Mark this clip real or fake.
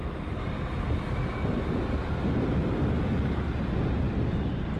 real